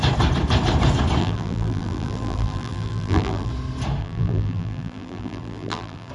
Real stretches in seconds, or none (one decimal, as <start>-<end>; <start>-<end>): 0.0-1.2; 3.5-4.0